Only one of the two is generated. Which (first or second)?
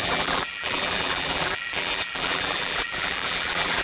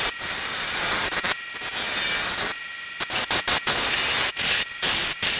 first